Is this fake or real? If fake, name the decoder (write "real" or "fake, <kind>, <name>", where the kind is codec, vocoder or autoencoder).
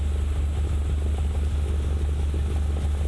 real